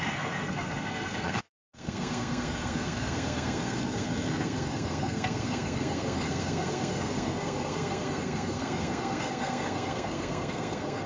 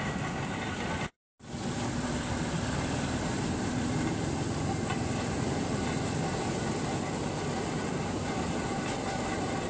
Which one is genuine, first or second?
second